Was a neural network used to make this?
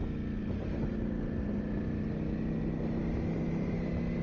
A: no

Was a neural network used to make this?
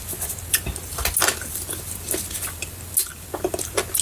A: no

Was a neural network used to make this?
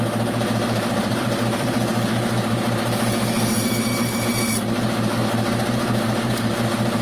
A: yes